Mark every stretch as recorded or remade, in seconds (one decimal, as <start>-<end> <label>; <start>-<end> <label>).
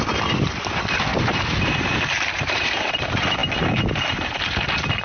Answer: 0.0-1.1 recorded; 1.1-2.9 remade; 2.9-5.0 recorded